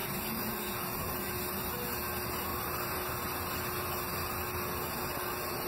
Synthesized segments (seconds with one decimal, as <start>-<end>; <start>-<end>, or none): 2.5-3.1

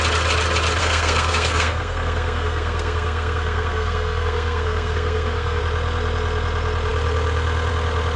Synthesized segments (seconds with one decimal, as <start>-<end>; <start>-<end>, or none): 0.8-5.6

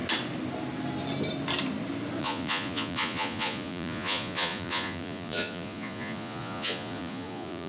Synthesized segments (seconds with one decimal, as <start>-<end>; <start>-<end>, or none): 2.2-7.7

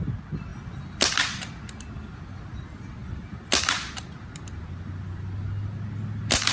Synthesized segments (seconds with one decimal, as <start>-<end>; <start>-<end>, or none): none

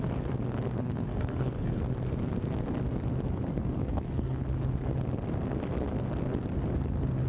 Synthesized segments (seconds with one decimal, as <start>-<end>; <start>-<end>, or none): 0.8-1.8; 3.5-4.4